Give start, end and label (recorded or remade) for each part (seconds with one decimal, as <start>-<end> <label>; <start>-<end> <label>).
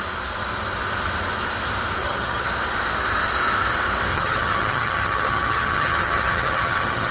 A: 0.0-2.0 recorded; 2.0-2.5 remade; 2.5-4.1 recorded; 4.1-7.1 remade